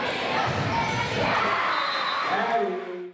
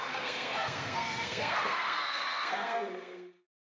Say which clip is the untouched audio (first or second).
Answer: first